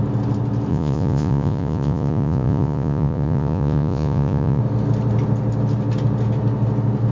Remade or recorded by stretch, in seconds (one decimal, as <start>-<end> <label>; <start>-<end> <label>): 0.0-0.7 recorded; 0.7-4.6 remade; 4.6-7.1 recorded